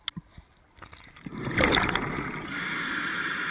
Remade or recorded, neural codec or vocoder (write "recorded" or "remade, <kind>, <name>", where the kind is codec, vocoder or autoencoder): recorded